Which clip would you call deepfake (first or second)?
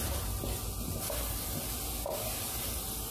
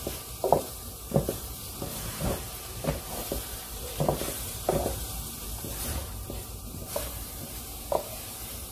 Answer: second